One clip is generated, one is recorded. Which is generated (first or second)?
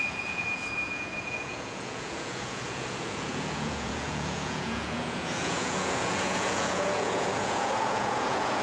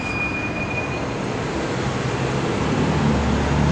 first